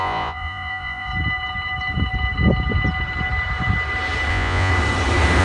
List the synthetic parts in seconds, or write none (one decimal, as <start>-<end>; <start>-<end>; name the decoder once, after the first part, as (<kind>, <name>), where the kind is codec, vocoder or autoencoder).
0.0-1.1 (vocoder, Vocos); 4.3-4.7

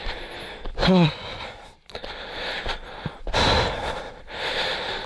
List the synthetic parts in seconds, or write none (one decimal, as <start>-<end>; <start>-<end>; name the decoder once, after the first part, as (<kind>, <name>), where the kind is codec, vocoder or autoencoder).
0.8-1.4 (vocoder, Vocos)

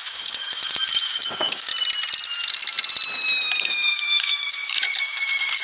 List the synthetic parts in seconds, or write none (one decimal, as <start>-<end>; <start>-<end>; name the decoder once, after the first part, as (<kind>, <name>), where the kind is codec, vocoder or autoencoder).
0.0-1.7 (codec, DAC); 3.6-5.6

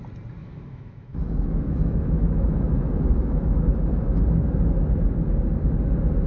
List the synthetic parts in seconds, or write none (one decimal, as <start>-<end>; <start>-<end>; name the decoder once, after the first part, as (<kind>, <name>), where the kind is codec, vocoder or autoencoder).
0.4-4.2 (autoencoder, DAC-VAE)

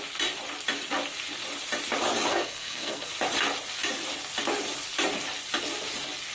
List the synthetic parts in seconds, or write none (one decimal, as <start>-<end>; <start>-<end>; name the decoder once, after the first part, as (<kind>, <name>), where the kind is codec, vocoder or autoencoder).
2.3-3.1 (codec, SNAC)

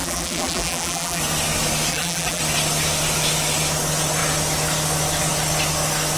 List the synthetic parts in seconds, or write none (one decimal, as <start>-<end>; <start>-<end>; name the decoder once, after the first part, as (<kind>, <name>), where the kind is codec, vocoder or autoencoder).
0.0-1.2 (vocoder, BigVGAN v2); 1.9-2.4

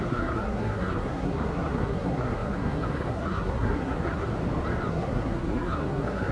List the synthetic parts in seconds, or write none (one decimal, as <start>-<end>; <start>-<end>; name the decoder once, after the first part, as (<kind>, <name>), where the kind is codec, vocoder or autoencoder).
0.0-4.3 (codec, SNAC); 4.9-6.3